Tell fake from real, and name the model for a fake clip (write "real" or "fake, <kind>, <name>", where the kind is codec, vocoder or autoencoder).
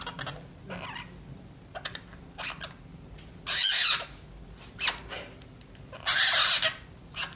real